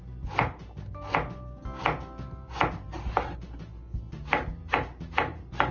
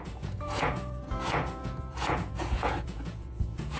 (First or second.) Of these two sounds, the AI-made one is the second